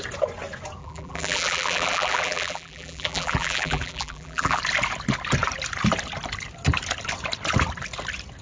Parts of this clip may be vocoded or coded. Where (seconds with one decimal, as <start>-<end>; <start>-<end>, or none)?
0.8-4.6